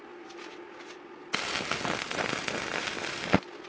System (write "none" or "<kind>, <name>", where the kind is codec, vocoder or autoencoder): none